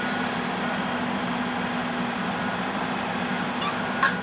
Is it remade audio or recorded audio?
recorded